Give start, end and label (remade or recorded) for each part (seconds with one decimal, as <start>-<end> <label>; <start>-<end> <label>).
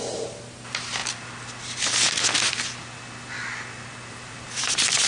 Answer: 0.0-1.0 remade; 1.0-4.1 recorded; 4.1-5.1 remade